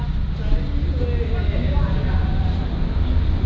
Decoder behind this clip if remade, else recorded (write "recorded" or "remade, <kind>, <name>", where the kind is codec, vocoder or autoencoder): recorded